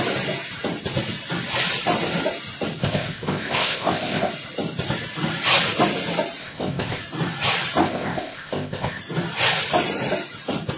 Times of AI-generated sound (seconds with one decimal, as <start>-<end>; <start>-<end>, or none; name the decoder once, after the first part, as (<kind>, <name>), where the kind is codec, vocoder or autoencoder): 2.8-4.3 (codec, ZipCodec); 6.4-7.0; 7.8-9.0